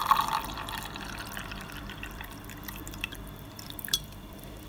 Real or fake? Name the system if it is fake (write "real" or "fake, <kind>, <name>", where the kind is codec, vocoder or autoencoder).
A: fake, vocoder, BigVGAN v2